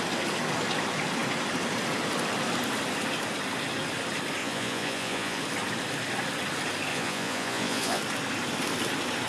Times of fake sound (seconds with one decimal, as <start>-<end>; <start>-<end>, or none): 4.4-5.4; 6.9-8.0